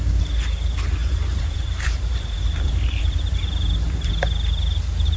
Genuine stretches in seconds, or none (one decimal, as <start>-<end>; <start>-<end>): 0.0-1.0; 4.1-5.2